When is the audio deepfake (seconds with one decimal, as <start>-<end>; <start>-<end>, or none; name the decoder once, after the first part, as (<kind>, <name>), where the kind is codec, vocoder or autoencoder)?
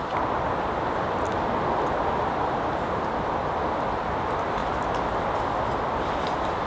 4.6-5.5 (vocoder, BigVGAN v2)